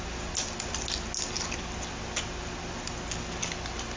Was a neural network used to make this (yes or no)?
no